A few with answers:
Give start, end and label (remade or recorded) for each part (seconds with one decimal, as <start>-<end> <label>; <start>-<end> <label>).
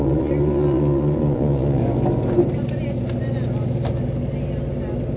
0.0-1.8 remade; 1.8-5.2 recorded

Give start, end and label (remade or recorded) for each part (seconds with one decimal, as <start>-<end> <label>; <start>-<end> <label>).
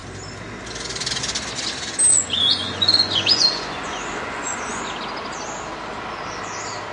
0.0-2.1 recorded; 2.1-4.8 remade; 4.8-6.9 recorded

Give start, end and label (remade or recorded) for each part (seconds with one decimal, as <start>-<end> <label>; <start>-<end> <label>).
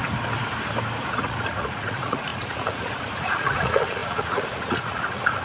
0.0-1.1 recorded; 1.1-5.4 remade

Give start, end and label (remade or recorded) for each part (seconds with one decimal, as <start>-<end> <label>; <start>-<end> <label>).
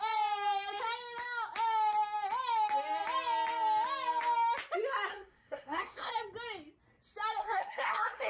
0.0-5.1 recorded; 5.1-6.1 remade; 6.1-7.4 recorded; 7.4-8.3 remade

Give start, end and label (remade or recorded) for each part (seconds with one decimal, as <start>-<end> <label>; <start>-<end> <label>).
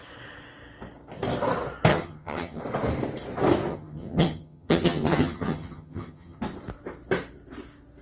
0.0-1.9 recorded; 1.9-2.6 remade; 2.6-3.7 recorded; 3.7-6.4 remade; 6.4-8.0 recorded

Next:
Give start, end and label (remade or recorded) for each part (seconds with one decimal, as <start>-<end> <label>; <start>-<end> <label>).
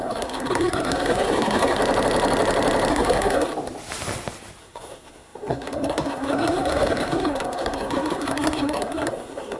0.0-1.8 remade; 1.8-2.9 recorded; 2.9-3.5 remade; 3.5-4.6 recorded; 4.6-9.6 remade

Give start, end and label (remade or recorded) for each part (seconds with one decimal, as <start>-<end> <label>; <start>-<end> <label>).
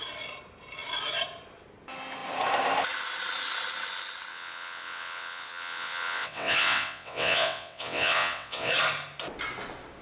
0.0-4.3 recorded; 4.3-8.7 remade; 8.7-10.0 recorded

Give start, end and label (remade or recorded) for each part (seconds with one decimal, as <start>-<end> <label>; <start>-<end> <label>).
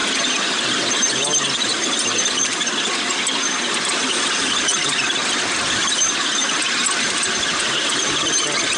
0.0-8.8 recorded